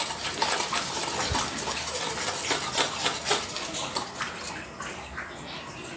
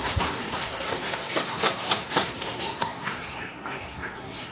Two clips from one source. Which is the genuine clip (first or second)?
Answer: first